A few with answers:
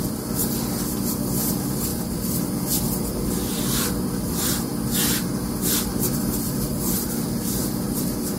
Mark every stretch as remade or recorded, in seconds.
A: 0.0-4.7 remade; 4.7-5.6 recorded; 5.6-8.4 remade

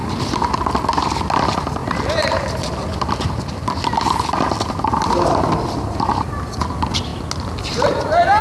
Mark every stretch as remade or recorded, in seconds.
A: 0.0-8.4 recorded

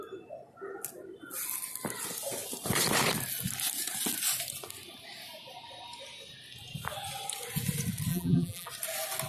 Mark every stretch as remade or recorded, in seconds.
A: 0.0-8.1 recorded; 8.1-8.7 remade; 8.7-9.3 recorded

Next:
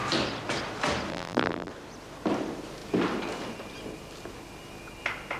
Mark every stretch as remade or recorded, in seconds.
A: 0.0-1.1 recorded; 1.1-1.7 remade; 1.7-5.4 recorded

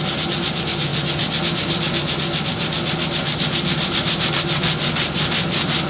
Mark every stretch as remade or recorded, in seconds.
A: 0.0-5.9 recorded